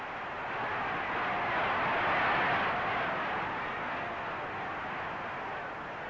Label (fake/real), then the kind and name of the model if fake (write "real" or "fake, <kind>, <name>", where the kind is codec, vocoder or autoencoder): real